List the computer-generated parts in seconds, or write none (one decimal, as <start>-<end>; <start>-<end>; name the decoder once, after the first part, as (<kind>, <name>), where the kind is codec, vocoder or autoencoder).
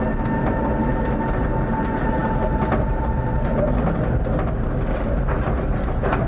none